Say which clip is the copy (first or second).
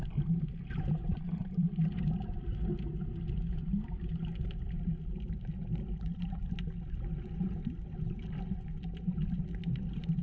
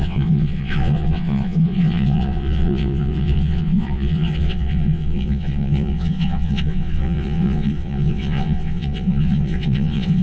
second